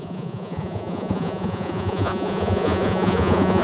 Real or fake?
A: fake